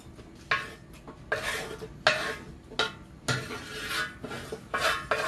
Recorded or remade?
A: recorded